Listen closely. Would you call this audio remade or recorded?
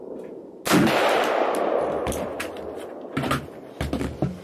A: recorded